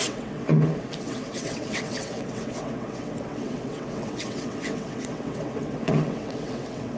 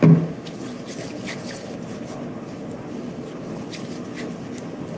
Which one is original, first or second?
second